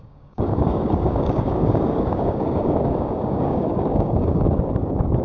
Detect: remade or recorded remade